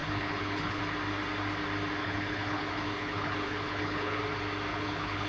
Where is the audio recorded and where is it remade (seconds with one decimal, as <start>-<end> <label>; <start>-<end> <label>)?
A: 0.0-0.8 remade; 0.8-2.0 recorded; 2.0-4.2 remade; 4.2-4.7 recorded; 4.7-5.3 remade